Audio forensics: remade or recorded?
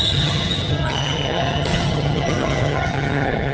remade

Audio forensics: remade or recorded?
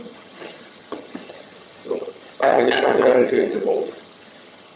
remade